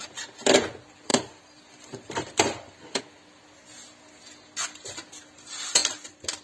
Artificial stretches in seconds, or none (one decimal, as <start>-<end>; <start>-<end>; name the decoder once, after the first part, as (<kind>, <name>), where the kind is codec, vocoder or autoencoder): 1.1-3.0 (vocoder, BigVGAN v2)